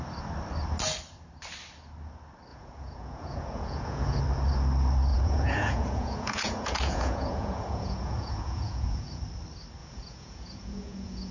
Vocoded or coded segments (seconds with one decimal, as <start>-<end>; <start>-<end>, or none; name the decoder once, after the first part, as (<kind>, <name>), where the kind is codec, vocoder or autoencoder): 2.5-4.2 (vocoder, Vocos); 5.1-9.2; 9.8-11.3